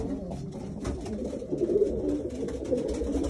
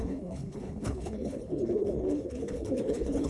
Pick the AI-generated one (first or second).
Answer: second